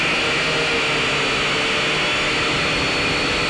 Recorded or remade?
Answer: recorded